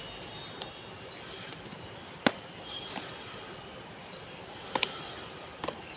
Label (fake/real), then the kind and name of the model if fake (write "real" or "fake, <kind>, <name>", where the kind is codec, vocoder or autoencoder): fake, vocoder, BigVGAN v2